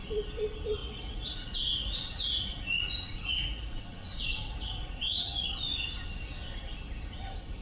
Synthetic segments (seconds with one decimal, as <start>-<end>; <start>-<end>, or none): 0.8-5.4